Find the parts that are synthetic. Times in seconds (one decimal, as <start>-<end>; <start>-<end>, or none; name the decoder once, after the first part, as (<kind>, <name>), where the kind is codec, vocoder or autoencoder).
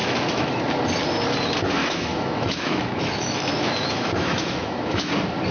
0.0-0.6 (autoencoder, DAC-VAE); 1.8-5.1